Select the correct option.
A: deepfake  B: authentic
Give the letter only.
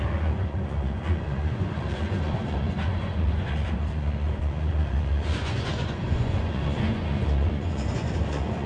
A